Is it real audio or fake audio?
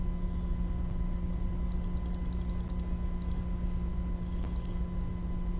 real